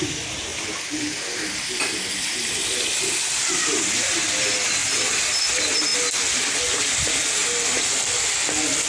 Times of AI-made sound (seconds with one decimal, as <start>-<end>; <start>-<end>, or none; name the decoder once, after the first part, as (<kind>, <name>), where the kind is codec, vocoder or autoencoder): 0.5-2.6 (vocoder, BigVGAN v2); 4.8-5.4